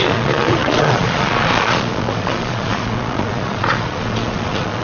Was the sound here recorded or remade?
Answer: remade